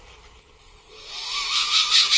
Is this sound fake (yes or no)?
yes